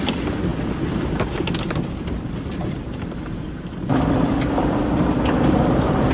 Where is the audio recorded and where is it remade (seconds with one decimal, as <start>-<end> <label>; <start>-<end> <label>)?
0.0-0.5 remade; 0.5-1.5 recorded; 1.5-6.1 remade